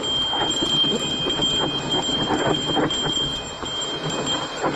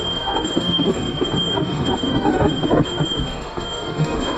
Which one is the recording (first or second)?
first